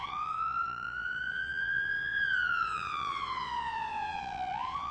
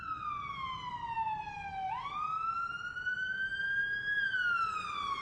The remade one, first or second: first